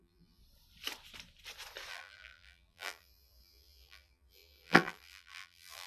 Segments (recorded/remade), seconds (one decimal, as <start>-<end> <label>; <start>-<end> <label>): 0.0-0.4 remade; 0.4-1.9 recorded; 1.9-5.9 remade